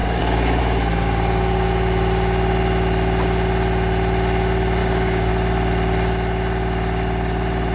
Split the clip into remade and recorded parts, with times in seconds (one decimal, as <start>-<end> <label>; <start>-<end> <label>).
0.0-0.6 remade; 0.6-4.8 recorded; 4.8-5.3 remade; 5.3-7.7 recorded

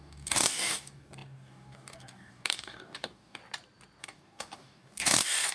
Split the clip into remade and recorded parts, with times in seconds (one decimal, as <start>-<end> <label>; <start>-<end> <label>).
0.0-3.4 remade; 3.4-4.0 recorded; 4.0-5.5 remade

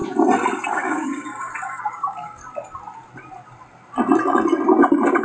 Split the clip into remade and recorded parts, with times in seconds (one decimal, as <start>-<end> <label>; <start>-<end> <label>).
0.0-0.7 recorded; 0.7-1.3 remade; 1.3-1.9 recorded; 1.9-2.4 remade; 2.4-5.2 recorded

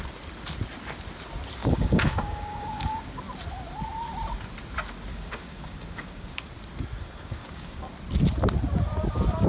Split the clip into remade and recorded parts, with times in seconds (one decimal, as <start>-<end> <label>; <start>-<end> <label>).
0.0-1.6 recorded; 1.6-3.2 remade; 3.2-5.1 recorded; 5.1-6.5 remade; 6.5-7.0 recorded; 7.0-7.9 remade; 7.9-9.5 recorded